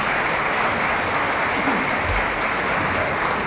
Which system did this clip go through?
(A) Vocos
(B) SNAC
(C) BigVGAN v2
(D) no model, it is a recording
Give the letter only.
D